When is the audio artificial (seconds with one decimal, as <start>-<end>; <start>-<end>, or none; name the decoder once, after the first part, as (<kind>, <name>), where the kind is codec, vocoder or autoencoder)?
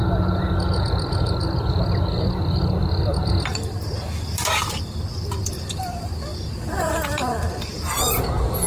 2.2-8.7 (vocoder, BigVGAN v2)